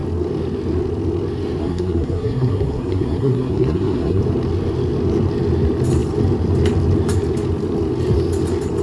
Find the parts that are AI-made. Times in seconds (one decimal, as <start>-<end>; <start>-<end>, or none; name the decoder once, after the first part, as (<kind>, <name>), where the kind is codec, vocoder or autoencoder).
1.6-4.2 (codec, SNAC)